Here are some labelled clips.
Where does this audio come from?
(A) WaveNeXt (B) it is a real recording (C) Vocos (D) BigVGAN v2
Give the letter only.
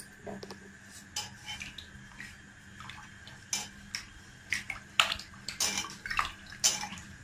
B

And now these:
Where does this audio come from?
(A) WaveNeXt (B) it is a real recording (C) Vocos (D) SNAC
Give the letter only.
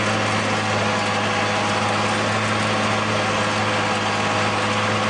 B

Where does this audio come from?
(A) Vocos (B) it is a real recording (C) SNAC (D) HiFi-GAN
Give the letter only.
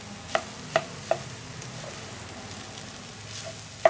B